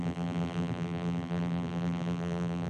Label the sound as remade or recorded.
remade